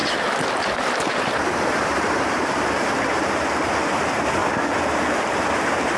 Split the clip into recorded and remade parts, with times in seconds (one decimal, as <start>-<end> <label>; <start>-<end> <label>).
0.0-4.4 remade; 4.4-5.2 recorded; 5.2-6.0 remade